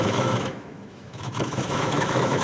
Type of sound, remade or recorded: remade